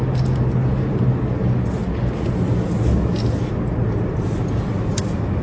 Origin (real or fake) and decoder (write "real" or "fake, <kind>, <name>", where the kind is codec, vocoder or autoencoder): real